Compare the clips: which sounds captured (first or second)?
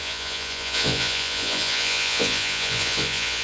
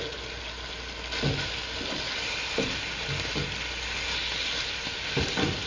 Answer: second